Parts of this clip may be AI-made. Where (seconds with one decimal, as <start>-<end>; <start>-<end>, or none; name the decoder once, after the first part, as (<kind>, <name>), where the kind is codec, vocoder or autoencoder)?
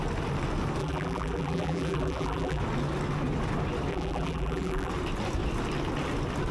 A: 0.8-2.6 (vocoder, BigVGAN v2); 3.9-4.9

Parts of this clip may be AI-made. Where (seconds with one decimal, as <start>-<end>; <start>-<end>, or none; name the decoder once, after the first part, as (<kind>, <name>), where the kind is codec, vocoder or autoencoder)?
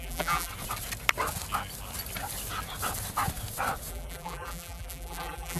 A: 0.0-0.5 (vocoder, BigVGAN v2); 3.9-5.6